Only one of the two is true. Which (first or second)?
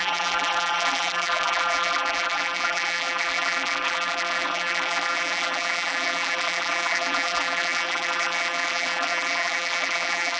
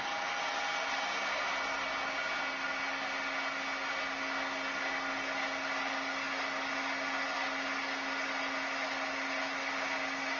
second